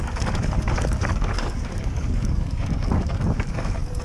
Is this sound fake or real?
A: fake